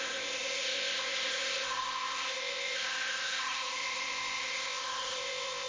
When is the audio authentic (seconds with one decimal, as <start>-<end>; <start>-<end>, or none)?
none